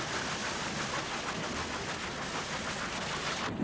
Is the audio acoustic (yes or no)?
yes